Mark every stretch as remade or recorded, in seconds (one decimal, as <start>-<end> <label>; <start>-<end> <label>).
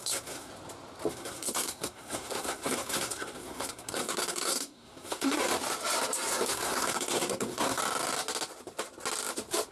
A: 0.0-0.5 remade; 0.5-1.1 recorded; 1.1-5.4 remade; 5.4-6.5 recorded; 6.5-7.8 remade; 7.8-9.7 recorded